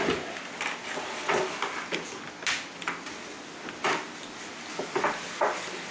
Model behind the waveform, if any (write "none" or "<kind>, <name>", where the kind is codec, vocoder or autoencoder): none